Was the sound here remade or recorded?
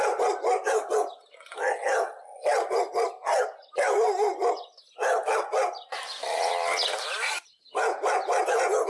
recorded